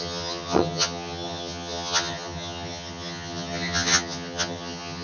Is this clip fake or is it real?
fake